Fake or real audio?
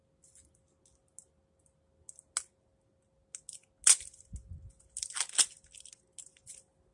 real